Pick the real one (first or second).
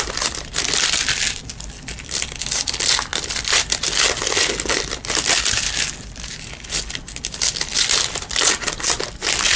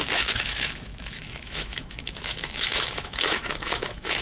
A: first